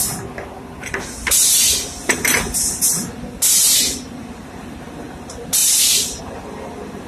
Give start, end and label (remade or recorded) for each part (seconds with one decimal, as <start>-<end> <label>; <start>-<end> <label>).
0.0-5.6 recorded; 5.6-6.2 remade; 6.2-7.1 recorded